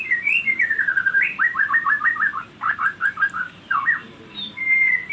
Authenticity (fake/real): fake